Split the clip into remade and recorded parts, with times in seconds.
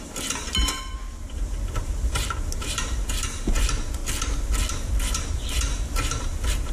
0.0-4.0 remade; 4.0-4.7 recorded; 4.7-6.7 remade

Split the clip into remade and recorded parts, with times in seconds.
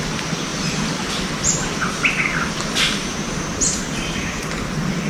0.0-0.5 recorded; 0.5-1.1 remade; 1.1-5.1 recorded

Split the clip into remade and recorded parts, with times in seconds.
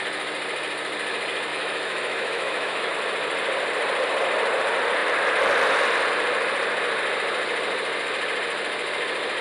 0.0-1.5 recorded; 1.5-2.9 remade; 2.9-9.4 recorded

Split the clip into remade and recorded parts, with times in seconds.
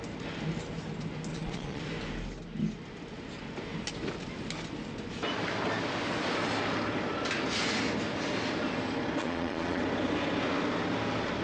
0.0-1.3 recorded; 1.3-1.8 remade; 1.8-9.2 recorded; 9.2-9.8 remade; 9.8-11.4 recorded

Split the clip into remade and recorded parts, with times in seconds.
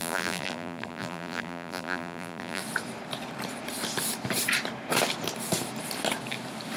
0.0-2.6 remade; 2.6-6.8 recorded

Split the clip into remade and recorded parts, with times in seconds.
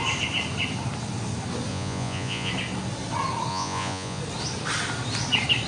0.0-1.7 recorded; 1.7-2.5 remade; 2.5-3.5 recorded; 3.5-4.2 remade; 4.2-5.7 recorded